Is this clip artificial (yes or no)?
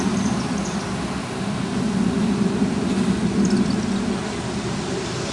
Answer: no